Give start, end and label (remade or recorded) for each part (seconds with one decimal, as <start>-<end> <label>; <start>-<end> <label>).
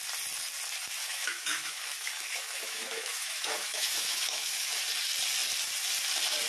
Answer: 0.0-1.0 recorded; 1.0-4.8 remade; 4.8-6.5 recorded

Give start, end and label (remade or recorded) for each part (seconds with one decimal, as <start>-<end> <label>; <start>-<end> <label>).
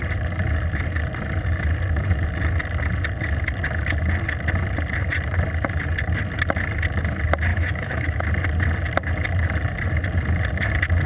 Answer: 0.0-7.5 recorded; 7.5-8.2 remade; 8.2-11.1 recorded